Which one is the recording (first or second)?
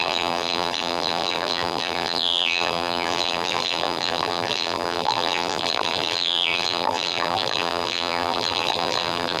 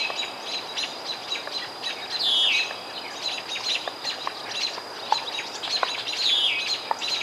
second